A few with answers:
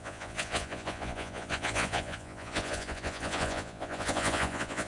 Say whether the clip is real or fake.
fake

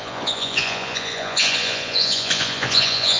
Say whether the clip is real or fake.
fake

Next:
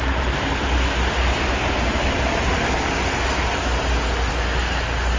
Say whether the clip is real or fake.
real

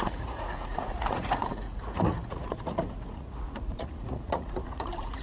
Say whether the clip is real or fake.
fake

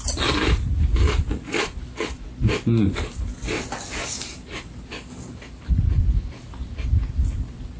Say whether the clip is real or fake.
real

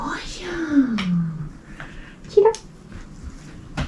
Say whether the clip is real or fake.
real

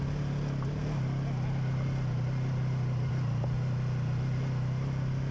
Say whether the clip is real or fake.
real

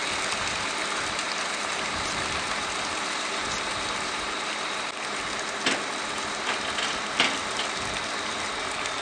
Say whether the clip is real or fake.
real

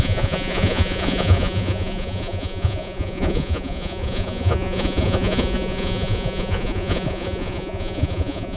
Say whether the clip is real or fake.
fake